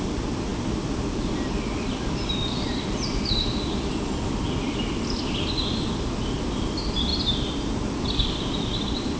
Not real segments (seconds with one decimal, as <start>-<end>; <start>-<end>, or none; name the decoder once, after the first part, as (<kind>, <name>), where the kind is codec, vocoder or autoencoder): 0.0-7.1 (vocoder, BigVGAN v2); 8.0-9.2